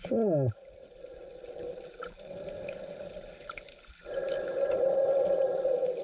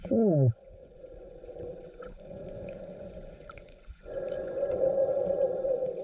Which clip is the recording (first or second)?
first